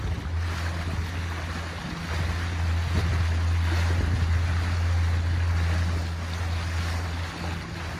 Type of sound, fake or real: real